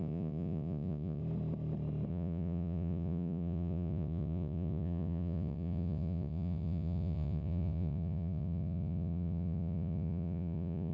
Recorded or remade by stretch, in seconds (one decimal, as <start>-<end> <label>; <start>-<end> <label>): 0.0-1.2 remade; 1.2-2.1 recorded; 2.1-10.9 remade